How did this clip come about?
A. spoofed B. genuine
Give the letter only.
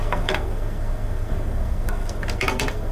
A